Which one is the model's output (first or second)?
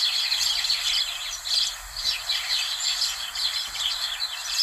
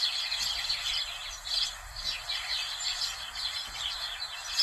first